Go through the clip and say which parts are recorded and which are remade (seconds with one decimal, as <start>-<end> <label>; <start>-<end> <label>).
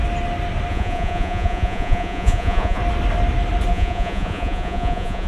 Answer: 0.0-0.7 recorded; 0.7-2.8 remade; 2.8-3.7 recorded; 3.7-5.3 remade